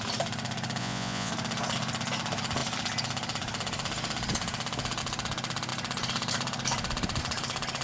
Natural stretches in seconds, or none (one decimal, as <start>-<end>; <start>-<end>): 0.0-0.8; 1.3-7.8